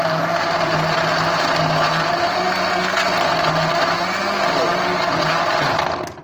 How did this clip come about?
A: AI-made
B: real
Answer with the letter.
B